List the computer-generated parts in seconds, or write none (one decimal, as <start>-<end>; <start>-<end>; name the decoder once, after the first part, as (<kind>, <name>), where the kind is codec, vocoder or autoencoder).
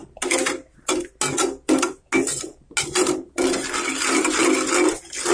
none